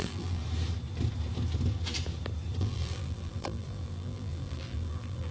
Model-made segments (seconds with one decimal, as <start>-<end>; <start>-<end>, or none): 0.0-0.4; 2.6-5.3